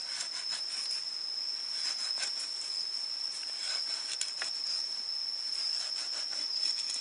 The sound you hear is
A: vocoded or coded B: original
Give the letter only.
B